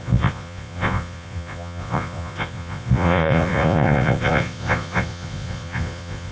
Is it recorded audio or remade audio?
remade